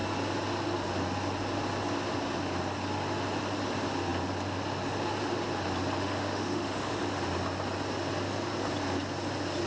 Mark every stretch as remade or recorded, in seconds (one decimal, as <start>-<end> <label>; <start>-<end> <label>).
0.0-6.0 recorded; 6.0-7.2 remade; 7.2-9.7 recorded